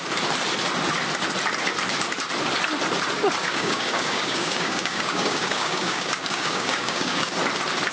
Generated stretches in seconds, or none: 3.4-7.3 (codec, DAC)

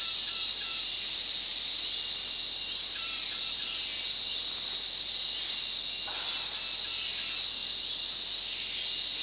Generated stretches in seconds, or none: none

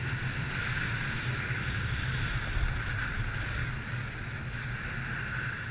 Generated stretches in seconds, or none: 3.6-4.1 (codec, DAC)

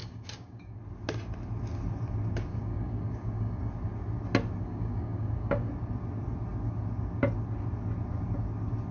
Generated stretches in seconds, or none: 0.0-0.8 (codec, DAC); 2.5-3.7; 4.6-5.7

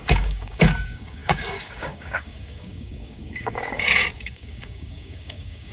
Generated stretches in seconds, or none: 0.0-5.7 (codec, DAC)

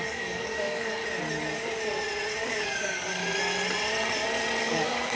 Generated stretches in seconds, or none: 0.0-1.0 (codec, DAC); 2.4-3.2; 4.6-5.2

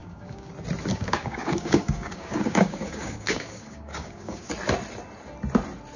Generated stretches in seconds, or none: 0.0-0.5 (codec, DAC); 0.9-4.5